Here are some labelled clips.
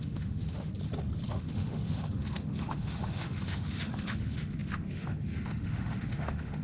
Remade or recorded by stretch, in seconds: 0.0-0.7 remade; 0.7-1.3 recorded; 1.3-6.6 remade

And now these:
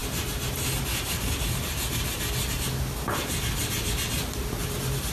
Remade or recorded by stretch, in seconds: 0.0-5.1 recorded

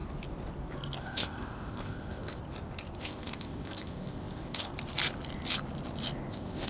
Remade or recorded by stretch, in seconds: 0.0-1.0 recorded; 1.0-2.4 remade; 2.4-3.0 recorded; 3.0-4.7 remade; 4.7-6.3 recorded; 6.3-6.7 remade

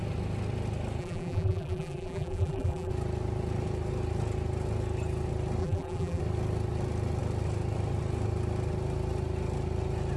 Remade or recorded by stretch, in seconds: 0.0-1.0 recorded; 1.0-2.9 remade; 2.9-5.6 recorded; 5.6-6.2 remade; 6.2-10.2 recorded